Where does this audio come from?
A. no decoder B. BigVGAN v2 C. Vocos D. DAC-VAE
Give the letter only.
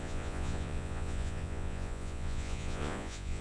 C